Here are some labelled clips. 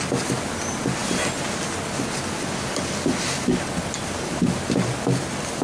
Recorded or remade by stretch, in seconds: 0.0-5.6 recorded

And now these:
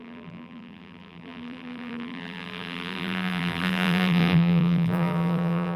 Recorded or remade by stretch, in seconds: 0.0-5.8 remade

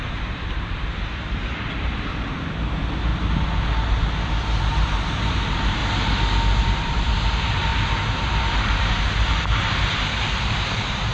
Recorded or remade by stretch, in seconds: 0.0-3.1 remade; 3.1-4.6 recorded; 4.6-5.8 remade; 5.8-6.6 recorded; 6.6-7.7 remade; 7.7-8.5 recorded; 8.5-11.1 remade

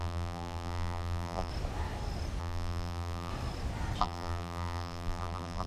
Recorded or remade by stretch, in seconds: 0.0-1.5 remade; 1.5-2.4 recorded; 2.4-3.3 remade; 3.3-4.0 recorded; 4.0-5.7 remade

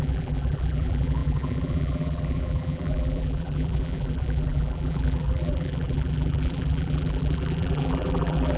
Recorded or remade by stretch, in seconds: 0.0-8.6 remade

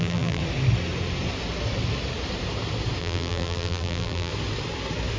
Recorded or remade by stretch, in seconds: 0.0-0.4 remade; 0.4-3.0 recorded; 3.0-4.3 remade; 4.3-5.2 recorded